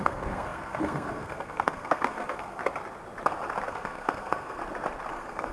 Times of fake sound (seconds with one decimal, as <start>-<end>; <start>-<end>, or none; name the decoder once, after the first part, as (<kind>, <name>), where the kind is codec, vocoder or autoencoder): 0.0-2.6 (codec, SNAC); 3.7-4.6; 5.1-5.5